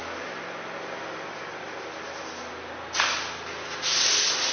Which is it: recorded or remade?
recorded